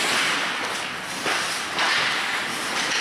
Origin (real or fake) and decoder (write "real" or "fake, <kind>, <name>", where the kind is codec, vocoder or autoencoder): real